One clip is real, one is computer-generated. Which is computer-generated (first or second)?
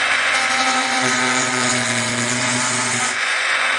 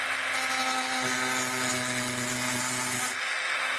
first